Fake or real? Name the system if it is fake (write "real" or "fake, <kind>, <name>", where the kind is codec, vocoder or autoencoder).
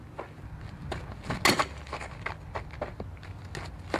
real